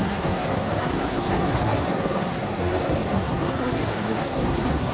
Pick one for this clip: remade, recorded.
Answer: remade